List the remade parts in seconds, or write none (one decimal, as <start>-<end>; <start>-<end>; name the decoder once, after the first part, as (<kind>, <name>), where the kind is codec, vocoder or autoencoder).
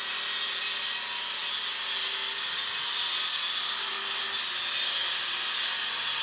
none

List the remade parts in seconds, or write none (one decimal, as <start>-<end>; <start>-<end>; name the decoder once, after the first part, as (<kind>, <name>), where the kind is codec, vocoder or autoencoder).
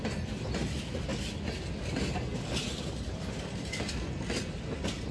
none